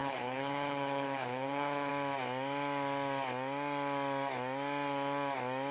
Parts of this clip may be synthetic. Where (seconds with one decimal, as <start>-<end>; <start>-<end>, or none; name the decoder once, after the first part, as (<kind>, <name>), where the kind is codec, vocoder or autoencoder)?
0.0-1.9 (codec, HILCodec)